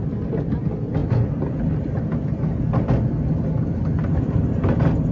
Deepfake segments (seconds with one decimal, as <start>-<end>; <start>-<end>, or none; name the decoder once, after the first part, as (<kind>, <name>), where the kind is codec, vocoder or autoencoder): none